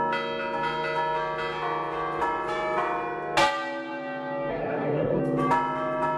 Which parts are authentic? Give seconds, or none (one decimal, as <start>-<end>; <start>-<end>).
0.0-4.5; 5.2-6.2